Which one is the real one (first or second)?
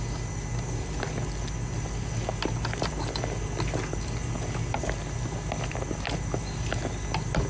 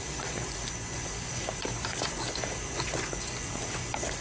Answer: first